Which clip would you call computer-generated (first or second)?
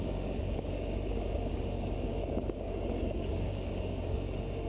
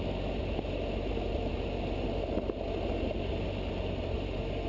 first